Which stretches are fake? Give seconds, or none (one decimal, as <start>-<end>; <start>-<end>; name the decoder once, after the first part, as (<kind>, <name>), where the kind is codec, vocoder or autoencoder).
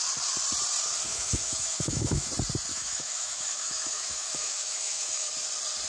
1.1-2.3 (autoencoder, DAC-VAE); 2.7-5.3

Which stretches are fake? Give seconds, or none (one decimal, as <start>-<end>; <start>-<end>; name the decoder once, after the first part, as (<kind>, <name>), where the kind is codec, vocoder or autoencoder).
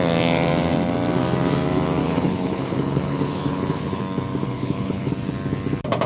2.0-4.0 (codec, HILCodec); 4.4-5.1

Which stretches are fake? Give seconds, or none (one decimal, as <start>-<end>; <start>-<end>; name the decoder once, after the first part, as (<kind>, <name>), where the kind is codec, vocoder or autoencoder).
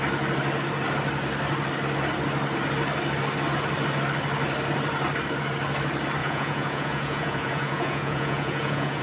6.2-9.0 (vocoder, Vocos)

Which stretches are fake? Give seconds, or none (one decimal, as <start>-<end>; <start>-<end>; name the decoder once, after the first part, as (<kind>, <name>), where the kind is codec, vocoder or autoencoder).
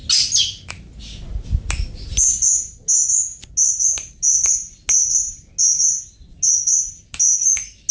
none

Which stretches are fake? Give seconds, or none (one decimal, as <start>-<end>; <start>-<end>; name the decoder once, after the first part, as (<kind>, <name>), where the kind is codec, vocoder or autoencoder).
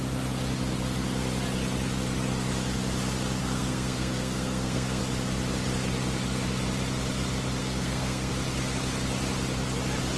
3.4-5.0 (codec, SNAC); 7.6-8.3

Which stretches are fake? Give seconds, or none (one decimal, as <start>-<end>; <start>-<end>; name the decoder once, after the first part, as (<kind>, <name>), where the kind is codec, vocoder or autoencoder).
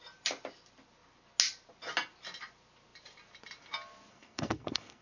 4.1-5.0 (codec, SNAC)